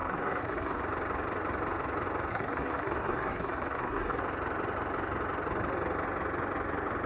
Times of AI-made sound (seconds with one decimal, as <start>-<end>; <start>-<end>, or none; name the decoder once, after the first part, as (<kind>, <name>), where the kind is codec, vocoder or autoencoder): 0.0-0.8 (codec, SNAC); 2.3-4.2